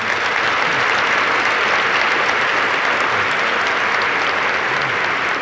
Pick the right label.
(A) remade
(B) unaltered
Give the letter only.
B